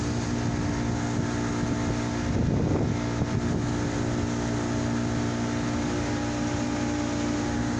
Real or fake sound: real